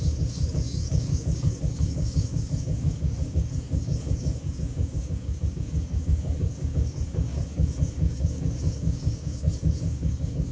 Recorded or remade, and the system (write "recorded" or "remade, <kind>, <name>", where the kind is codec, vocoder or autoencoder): remade, codec, DAC